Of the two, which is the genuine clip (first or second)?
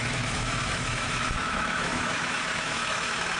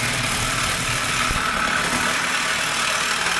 second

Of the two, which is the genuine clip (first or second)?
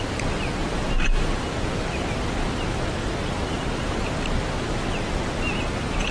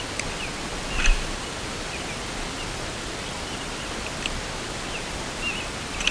first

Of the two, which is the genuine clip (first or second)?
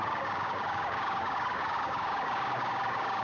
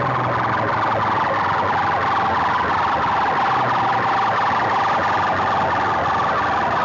second